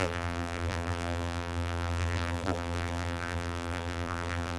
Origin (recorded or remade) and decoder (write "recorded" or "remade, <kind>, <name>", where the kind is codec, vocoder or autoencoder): remade, vocoder, BigVGAN v2